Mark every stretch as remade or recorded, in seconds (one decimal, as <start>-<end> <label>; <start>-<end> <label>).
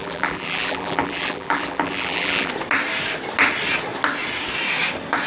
0.0-2.5 remade; 2.5-5.3 recorded